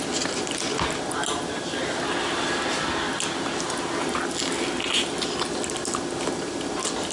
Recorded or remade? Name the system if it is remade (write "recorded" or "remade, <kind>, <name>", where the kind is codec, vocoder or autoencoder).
recorded